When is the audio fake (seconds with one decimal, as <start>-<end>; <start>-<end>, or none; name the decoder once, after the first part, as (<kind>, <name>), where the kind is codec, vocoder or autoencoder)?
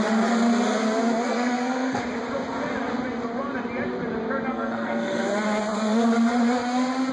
1.3-2.0 (codec, SNAC); 4.5-5.2